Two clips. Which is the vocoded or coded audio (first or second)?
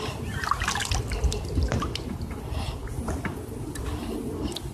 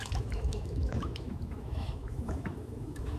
second